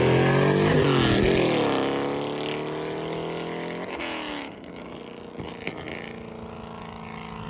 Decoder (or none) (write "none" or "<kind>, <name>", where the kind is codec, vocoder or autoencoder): none